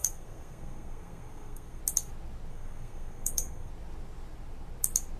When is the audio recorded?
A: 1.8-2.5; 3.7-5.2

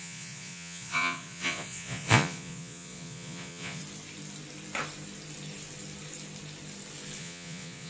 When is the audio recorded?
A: 3.8-7.2

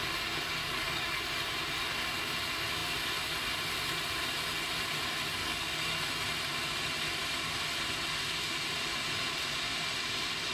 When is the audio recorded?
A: 0.0-0.6; 1.2-5.3; 6.0-10.5

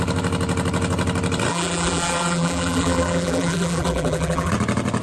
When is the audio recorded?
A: 0.0-1.5; 4.5-5.0

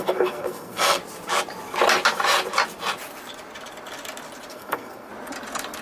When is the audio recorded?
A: 1.0-4.5; 5.1-5.8

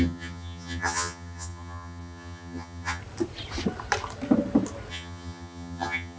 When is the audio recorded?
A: 3.0-4.9

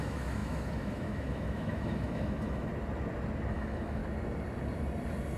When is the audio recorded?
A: 2.7-3.5; 4.0-5.4

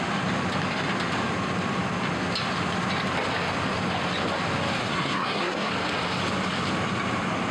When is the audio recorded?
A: 0.0-4.8; 5.7-7.5